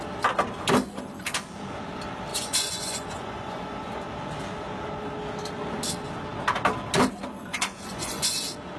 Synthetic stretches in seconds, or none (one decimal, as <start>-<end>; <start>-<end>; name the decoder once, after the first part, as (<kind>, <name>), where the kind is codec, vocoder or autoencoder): 2.3-3.9 (vocoder, Vocos); 7.5-8.3